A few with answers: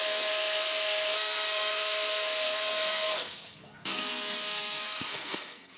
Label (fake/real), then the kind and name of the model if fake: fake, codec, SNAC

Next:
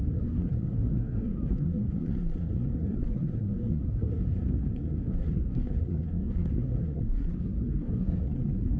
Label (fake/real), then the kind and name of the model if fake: fake, codec, SNAC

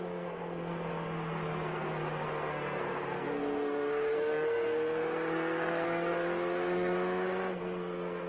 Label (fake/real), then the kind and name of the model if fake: fake, codec, SNAC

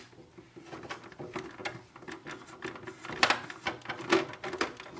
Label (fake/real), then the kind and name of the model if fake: real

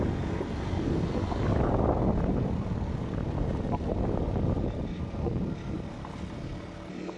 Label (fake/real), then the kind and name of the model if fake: real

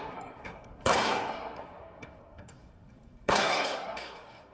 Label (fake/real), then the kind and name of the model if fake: fake, codec, SNAC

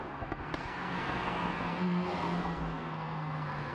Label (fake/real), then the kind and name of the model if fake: fake, codec, SNAC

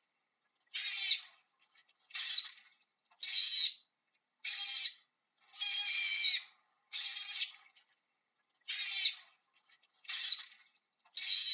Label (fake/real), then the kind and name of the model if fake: real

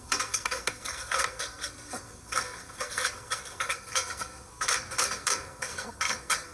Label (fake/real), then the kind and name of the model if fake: fake, codec, SNAC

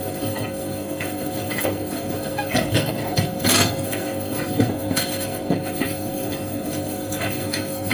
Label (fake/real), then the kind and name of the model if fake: fake, codec, SNAC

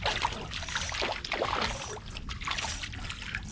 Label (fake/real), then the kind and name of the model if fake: real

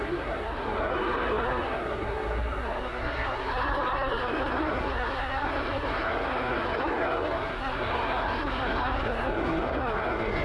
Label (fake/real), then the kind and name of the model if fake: fake, codec, SNAC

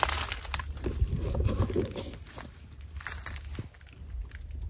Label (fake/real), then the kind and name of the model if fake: real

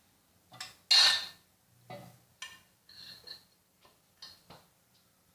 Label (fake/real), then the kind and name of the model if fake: real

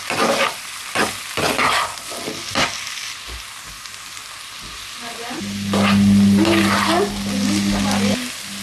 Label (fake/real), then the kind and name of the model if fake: real